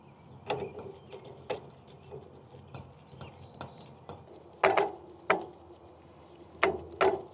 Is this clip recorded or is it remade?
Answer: recorded